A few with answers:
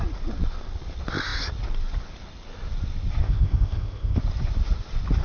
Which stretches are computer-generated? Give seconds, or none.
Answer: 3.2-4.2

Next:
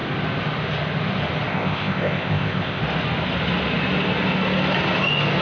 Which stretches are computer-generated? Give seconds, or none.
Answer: 1.5-2.8

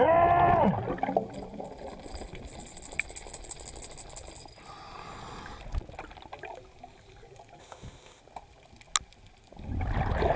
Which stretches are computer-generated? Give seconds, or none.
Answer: 7.6-8.2

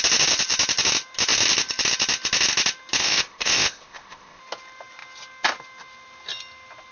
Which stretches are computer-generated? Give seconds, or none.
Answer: 3.0-4.4

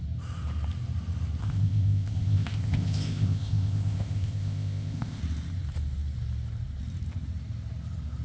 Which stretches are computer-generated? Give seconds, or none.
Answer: 1.4-5.2

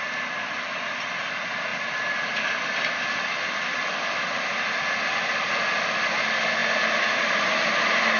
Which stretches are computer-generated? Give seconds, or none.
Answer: none